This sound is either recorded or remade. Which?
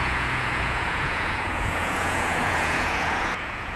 remade